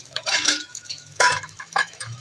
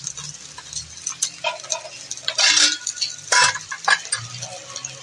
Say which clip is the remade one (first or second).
first